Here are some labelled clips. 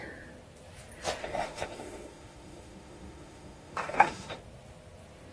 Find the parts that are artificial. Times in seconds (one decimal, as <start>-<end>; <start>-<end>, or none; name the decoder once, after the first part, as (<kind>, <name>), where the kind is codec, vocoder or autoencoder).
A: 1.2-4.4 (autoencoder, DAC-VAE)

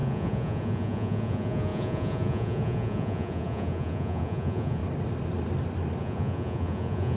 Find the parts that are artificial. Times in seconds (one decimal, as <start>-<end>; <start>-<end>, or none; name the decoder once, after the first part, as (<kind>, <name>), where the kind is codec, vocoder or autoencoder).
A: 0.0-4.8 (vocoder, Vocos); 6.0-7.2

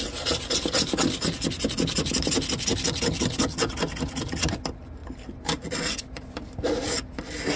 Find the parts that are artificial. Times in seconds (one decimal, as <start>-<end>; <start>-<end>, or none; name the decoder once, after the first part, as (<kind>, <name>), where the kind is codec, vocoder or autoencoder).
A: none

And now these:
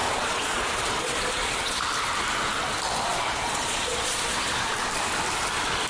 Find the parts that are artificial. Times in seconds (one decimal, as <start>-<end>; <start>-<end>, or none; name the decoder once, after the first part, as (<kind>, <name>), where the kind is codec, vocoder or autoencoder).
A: 0.0-1.8 (vocoder, Vocos); 3.1-4.7

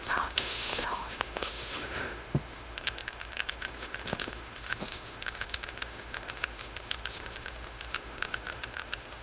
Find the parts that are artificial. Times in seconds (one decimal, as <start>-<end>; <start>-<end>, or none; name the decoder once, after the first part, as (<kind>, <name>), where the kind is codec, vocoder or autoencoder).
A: 0.0-9.2 (autoencoder, DAC-VAE)

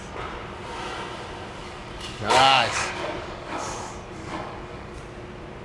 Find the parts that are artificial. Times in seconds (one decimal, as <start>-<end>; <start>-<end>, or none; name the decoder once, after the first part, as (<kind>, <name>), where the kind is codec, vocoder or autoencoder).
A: 1.6-5.0 (codec, DAC)